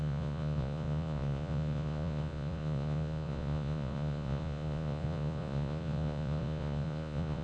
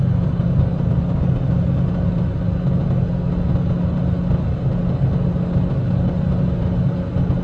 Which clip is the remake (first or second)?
first